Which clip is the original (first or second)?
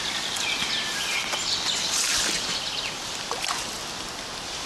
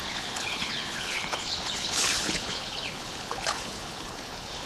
first